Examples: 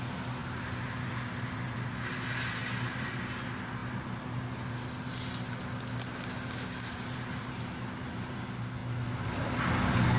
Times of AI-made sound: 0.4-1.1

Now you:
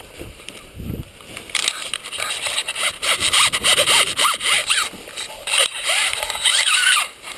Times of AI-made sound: 0.0-1.6; 2.3-4.6; 5.3-7.4

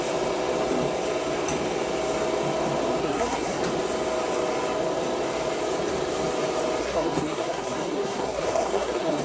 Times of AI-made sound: 3.0-3.6; 6.8-9.2

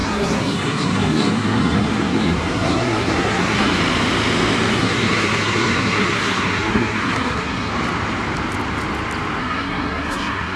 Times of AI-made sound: 0.0-3.8; 4.7-7.7; 9.4-10.6

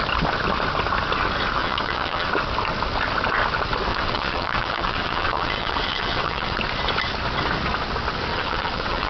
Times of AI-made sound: 1.6-2.3; 3.9-6.6; 8.3-9.1

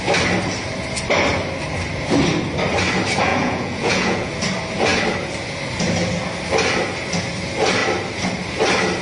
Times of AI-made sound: 3.3-4.3